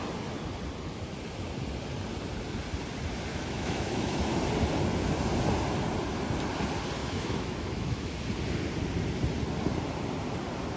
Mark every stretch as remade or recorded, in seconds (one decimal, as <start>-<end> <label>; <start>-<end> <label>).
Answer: 0.0-3.3 recorded; 3.3-4.4 remade; 4.4-7.0 recorded; 7.0-8.2 remade; 8.2-10.8 recorded